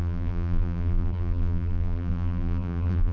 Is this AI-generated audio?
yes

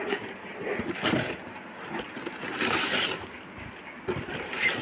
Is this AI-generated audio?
no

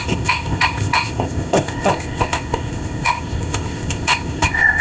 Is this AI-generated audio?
yes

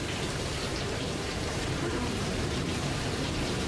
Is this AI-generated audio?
yes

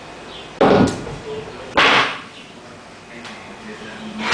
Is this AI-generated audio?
no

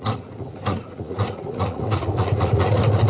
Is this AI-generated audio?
yes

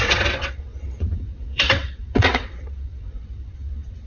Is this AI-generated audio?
yes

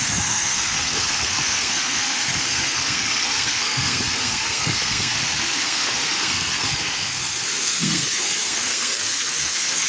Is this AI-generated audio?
yes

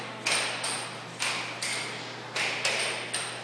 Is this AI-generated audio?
no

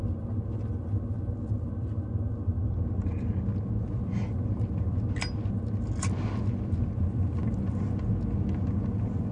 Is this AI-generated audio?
no